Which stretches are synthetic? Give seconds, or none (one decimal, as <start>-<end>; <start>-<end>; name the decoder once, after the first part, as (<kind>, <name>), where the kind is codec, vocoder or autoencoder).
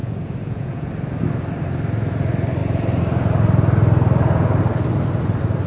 0.0-0.9 (vocoder, Vocos)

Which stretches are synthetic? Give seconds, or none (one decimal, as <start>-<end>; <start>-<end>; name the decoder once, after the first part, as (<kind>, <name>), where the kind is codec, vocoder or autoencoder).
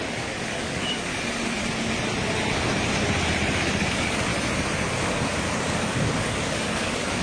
0.0-1.1 (codec, DAC); 3.9-4.3; 4.9-7.2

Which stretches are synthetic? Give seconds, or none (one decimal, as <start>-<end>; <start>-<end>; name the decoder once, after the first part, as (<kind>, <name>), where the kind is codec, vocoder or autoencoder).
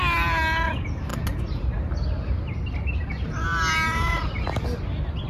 none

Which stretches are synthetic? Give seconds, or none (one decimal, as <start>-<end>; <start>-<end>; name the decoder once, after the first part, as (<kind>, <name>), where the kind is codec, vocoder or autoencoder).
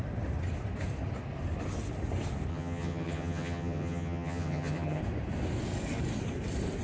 2.5-5.0 (vocoder, HiFi-GAN)